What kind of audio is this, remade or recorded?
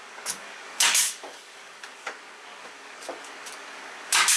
remade